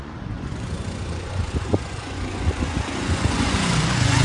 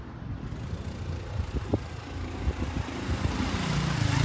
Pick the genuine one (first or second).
second